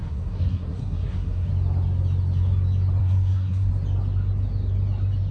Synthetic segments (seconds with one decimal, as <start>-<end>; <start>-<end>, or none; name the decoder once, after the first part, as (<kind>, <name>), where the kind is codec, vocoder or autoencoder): 0.0-1.5 (codec, SNAC); 3.0-3.7